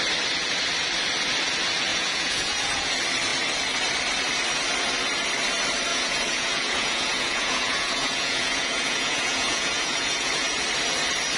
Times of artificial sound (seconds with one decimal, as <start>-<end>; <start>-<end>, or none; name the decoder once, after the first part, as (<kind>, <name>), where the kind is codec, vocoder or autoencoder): 1.9-2.9 (vocoder, Vocos); 5.9-10.6